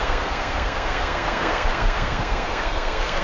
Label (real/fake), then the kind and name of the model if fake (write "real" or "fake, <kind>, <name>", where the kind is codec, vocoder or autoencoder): fake, codec, SNAC